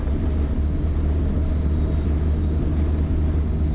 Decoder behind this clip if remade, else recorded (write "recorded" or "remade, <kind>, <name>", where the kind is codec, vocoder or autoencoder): recorded